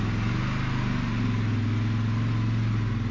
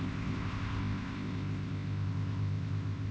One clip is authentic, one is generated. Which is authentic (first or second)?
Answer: first